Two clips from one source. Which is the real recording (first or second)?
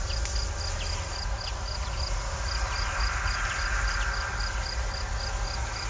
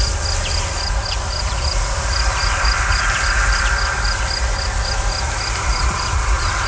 first